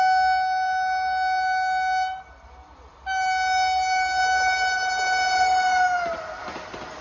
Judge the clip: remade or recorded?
recorded